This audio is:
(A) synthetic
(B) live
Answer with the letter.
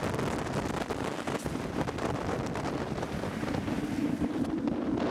B